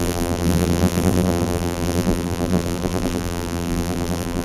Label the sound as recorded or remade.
remade